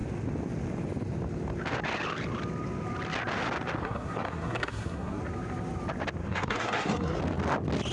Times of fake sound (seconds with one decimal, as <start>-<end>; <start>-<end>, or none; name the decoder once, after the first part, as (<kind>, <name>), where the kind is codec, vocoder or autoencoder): 3.8-5.2 (codec, SNAC); 6.2-7.2